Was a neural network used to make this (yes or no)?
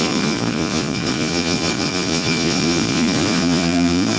yes